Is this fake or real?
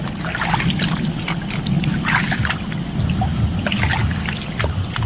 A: real